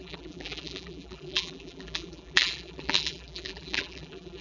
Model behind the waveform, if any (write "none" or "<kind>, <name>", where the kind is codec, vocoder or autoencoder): vocoder, BigVGAN v2